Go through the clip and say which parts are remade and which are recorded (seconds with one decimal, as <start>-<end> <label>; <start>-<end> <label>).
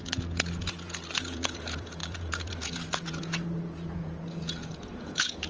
0.0-5.5 remade